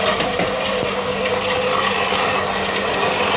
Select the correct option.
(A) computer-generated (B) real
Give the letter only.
B